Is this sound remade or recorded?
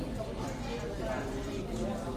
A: recorded